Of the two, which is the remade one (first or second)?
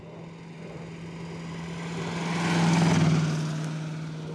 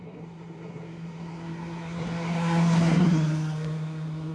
second